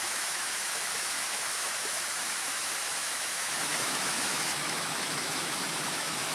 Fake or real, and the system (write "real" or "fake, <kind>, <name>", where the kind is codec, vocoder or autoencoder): fake, autoencoder, DAC-VAE